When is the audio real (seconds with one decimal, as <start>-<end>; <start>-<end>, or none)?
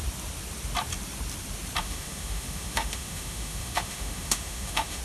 0.0-1.8